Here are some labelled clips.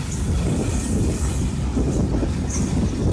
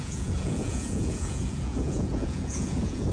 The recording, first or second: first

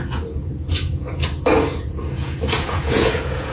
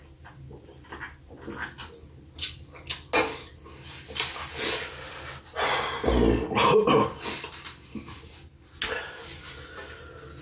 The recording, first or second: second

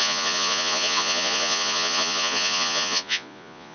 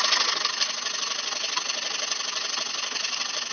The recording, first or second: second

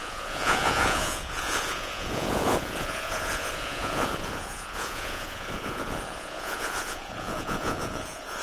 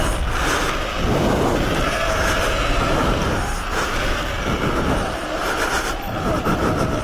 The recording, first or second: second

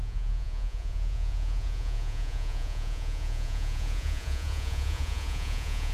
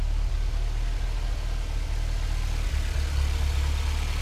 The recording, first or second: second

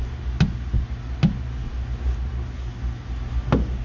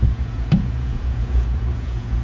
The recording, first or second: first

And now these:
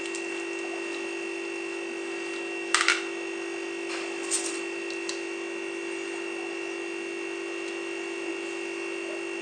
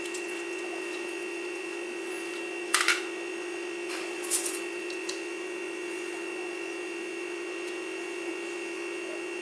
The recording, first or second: first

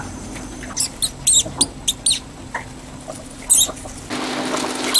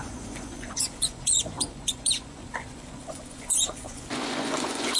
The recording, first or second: first